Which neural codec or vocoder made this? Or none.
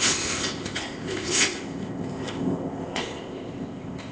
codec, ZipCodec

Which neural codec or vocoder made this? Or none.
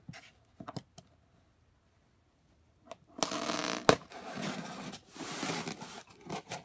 none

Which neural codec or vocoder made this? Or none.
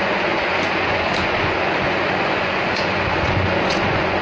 vocoder, Vocos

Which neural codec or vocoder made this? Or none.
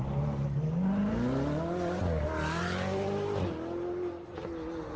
none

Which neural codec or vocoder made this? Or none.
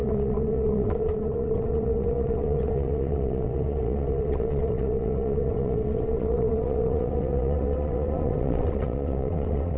vocoder, WaveNeXt